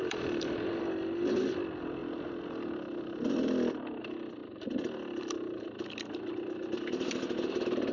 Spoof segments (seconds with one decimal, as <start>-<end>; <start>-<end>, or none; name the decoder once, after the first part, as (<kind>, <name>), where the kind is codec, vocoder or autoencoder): 0.0-2.0 (vocoder, BigVGAN v2); 4.0-4.4; 7.5-7.9